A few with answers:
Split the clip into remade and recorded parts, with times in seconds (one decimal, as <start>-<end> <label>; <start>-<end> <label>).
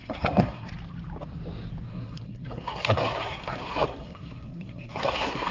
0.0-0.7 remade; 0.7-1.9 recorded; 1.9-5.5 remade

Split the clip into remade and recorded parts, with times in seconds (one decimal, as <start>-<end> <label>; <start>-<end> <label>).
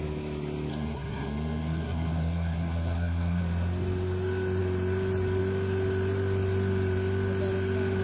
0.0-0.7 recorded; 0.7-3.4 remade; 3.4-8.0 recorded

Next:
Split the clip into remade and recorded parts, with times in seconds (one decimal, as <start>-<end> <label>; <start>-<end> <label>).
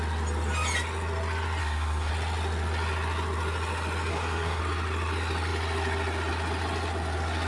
0.0-1.6 recorded; 1.6-2.1 remade; 2.1-4.1 recorded; 4.1-4.6 remade; 4.6-7.5 recorded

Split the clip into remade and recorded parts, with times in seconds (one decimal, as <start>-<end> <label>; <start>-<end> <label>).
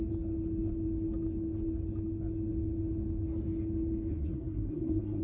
0.0-4.1 recorded; 4.1-5.2 remade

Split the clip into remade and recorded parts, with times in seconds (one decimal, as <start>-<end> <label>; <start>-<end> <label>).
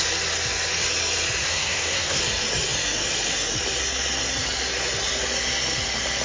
0.0-1.4 recorded; 1.4-2.2 remade; 2.2-6.2 recorded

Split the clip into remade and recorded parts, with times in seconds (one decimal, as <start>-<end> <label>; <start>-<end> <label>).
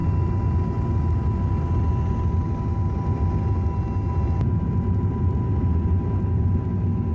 0.0-7.1 recorded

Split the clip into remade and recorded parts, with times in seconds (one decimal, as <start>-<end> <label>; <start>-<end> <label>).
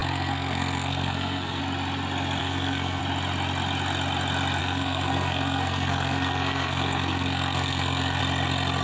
0.0-1.6 remade; 1.6-2.4 recorded; 2.4-3.0 remade; 3.0-4.6 recorded; 4.6-8.2 remade; 8.2-8.8 recorded